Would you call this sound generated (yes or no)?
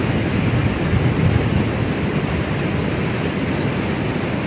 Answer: no